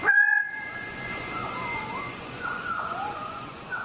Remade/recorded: remade